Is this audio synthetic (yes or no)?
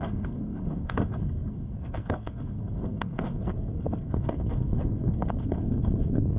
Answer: yes